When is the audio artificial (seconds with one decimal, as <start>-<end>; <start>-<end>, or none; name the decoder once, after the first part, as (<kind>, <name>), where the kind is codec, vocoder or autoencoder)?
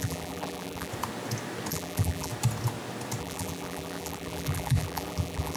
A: 0.0-0.9 (vocoder, BigVGAN v2); 1.7-2.3; 3.2-5.6